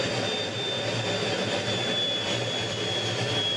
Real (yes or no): yes